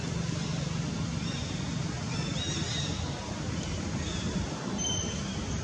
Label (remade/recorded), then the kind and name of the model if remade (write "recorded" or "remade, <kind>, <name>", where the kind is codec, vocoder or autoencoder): recorded